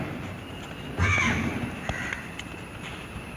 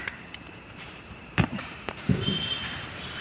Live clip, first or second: first